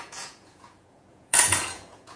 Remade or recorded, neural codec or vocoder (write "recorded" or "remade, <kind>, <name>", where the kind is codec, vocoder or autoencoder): remade, vocoder, Vocos